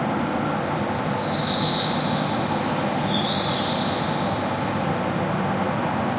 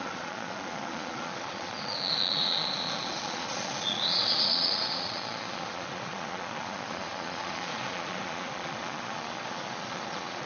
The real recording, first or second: first